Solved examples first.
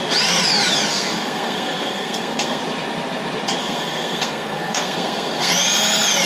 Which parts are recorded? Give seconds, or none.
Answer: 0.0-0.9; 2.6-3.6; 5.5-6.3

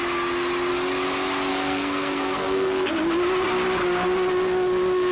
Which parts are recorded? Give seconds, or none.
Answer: 0.0-1.5; 2.9-5.1